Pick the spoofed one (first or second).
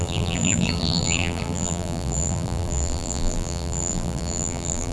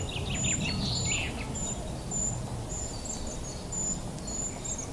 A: first